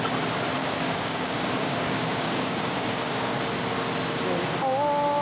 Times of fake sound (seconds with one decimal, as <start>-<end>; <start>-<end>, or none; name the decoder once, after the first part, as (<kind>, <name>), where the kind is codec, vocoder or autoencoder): 0.6-3.4 (codec, DAC)